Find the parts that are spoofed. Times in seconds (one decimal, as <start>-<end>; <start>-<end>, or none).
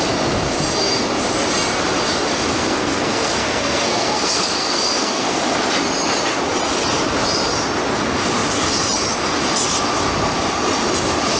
2.5-5.4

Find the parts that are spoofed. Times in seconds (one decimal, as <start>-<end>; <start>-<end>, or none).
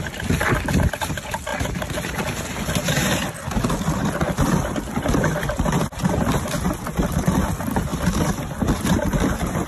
none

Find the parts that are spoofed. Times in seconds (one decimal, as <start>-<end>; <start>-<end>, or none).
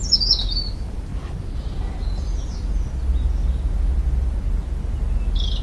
none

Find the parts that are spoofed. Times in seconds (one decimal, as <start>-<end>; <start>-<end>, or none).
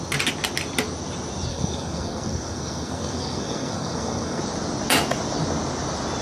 1.5-4.4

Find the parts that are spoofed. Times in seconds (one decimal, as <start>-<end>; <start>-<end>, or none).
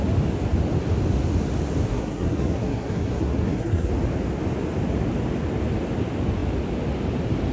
1.9-3.9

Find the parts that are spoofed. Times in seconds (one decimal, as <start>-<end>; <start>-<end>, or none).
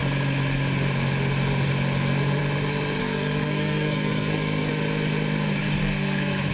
3.0-4.7; 5.8-6.5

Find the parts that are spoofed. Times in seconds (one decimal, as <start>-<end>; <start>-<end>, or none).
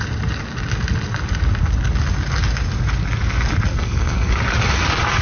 3.7-4.3